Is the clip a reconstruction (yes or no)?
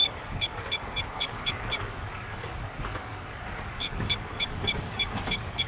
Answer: yes